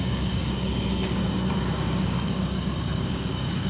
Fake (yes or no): yes